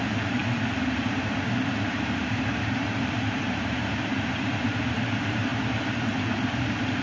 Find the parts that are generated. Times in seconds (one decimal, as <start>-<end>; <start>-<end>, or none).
0.0-5.5; 6.3-7.0